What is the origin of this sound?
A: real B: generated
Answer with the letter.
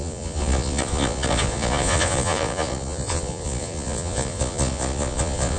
B